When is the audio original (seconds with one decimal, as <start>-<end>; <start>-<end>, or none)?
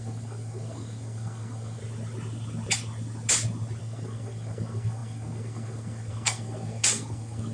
1.8-3.8